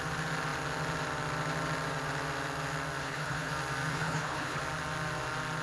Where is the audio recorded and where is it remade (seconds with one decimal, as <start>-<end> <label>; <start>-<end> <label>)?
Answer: 0.0-3.0 recorded; 3.0-3.5 remade; 3.5-3.9 recorded; 3.9-4.6 remade; 4.6-5.6 recorded